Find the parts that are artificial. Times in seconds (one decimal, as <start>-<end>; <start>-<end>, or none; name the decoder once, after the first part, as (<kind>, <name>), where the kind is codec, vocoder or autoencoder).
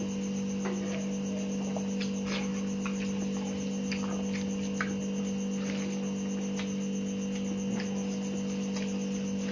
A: none